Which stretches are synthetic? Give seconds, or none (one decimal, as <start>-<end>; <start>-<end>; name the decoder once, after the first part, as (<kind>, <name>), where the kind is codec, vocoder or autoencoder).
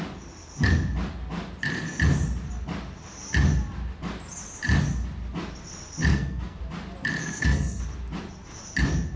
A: 6.1-6.6 (codec, SNAC); 7.2-7.8